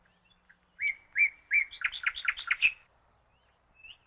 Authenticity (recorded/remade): recorded